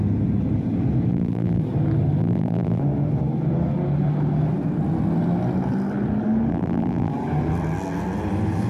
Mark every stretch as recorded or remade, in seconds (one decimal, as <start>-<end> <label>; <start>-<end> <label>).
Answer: 0.0-1.1 recorded; 1.1-1.6 remade; 1.6-2.2 recorded; 2.2-2.8 remade; 2.8-6.5 recorded; 6.5-7.1 remade; 7.1-8.7 recorded